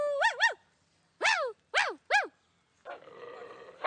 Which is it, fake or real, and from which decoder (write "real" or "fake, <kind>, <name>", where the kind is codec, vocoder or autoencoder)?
real